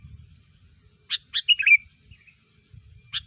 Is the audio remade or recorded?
recorded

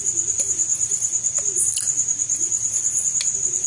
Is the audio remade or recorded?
recorded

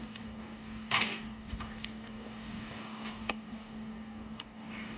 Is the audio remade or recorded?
remade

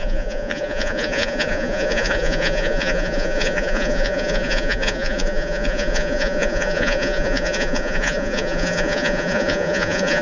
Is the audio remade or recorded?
remade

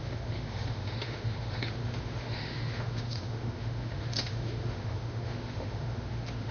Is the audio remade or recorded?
remade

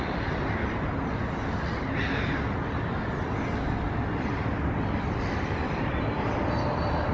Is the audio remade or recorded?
recorded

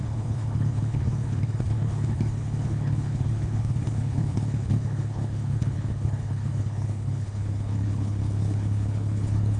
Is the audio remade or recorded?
remade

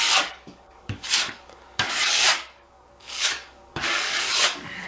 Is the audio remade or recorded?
remade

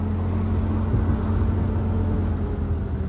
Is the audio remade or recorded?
recorded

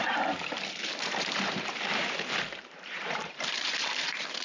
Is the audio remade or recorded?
remade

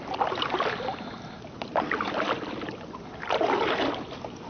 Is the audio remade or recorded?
recorded